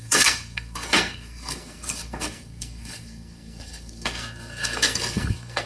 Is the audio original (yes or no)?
no